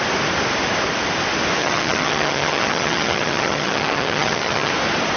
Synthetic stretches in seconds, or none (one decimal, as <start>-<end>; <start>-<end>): 1.6-4.7

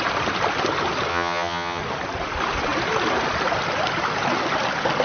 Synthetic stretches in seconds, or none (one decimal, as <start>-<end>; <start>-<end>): 1.1-1.8

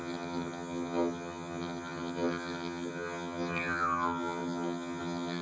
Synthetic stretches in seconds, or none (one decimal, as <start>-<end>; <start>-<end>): 0.0-5.4